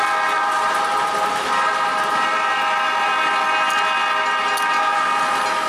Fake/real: real